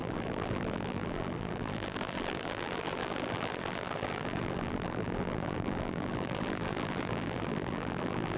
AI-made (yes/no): yes